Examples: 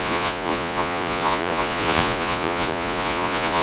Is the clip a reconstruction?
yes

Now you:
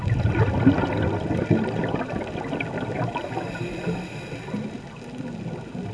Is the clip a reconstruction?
no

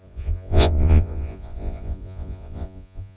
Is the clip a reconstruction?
yes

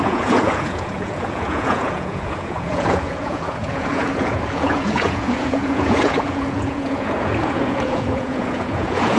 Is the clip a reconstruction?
yes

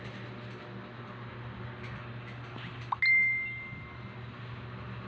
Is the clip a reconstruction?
no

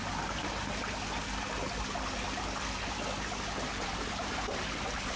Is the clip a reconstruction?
no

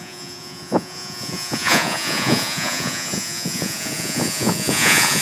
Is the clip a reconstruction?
yes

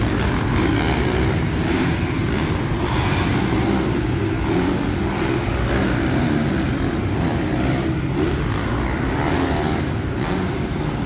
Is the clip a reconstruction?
no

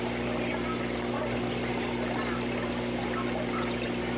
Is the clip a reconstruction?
no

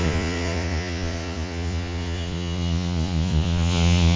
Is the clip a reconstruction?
yes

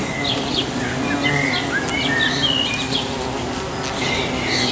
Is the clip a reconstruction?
no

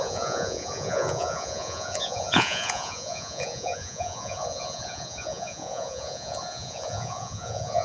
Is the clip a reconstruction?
yes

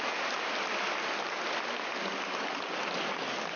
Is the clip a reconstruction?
no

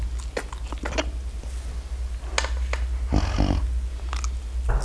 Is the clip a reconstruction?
no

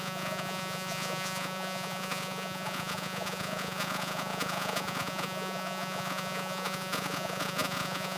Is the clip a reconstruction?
yes